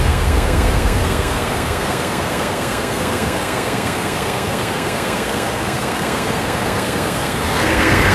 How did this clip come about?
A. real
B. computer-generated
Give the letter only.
B